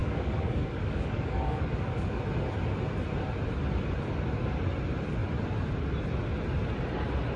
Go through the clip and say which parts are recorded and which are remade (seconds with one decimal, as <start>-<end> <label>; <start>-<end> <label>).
0.0-2.2 remade; 2.2-7.4 recorded